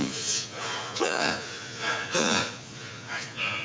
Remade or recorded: remade